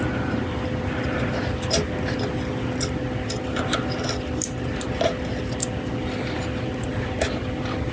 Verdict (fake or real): real